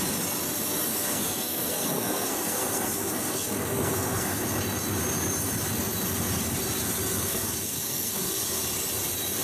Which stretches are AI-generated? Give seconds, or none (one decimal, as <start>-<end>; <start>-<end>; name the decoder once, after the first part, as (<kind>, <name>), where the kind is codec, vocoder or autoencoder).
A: 0.9-4.4 (codec, SNAC); 7.2-8.4